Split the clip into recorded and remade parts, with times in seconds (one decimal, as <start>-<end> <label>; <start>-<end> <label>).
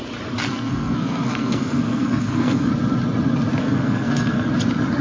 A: 0.0-0.5 recorded; 0.5-2.7 remade; 2.7-3.6 recorded; 3.6-4.5 remade; 4.5-5.0 recorded